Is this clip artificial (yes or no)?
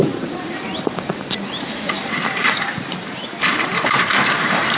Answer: yes